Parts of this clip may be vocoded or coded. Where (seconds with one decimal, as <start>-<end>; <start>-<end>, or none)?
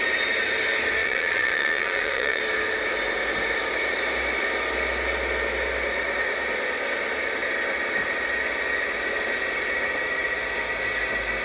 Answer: 1.0-2.4